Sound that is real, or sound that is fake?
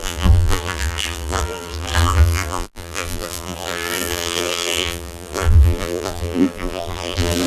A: fake